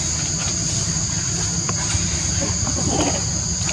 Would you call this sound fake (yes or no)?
no